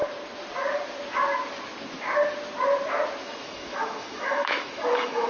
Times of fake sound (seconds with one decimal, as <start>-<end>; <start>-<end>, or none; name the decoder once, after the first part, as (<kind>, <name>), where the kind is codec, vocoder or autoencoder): 3.2-5.3 (autoencoder, DAC-VAE)